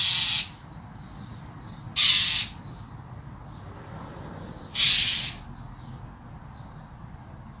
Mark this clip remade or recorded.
recorded